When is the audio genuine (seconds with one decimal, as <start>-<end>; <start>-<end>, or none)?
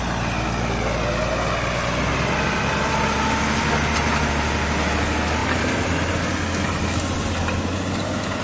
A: 0.0-5.4; 6.3-8.4